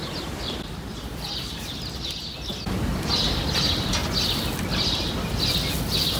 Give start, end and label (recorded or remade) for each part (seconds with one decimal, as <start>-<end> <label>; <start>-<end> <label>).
0.0-6.2 recorded